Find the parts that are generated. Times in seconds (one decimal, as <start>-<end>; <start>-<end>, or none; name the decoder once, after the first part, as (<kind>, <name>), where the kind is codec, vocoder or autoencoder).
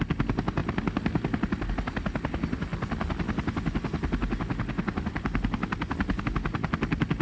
none